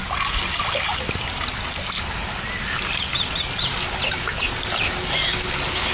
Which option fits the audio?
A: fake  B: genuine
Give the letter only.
B